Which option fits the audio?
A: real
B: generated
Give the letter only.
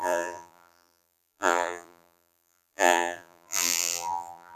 B